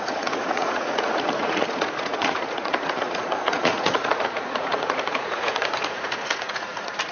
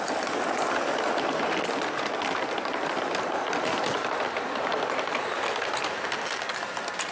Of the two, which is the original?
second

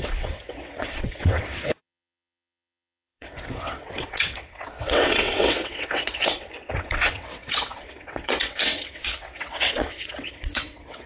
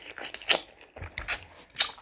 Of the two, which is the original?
second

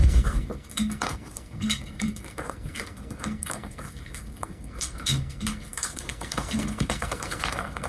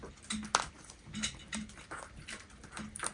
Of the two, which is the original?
second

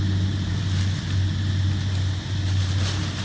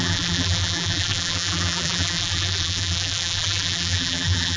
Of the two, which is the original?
first